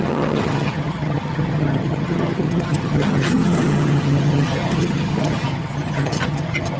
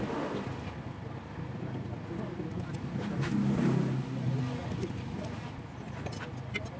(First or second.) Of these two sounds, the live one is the second